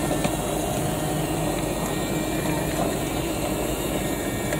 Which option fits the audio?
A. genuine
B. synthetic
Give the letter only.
A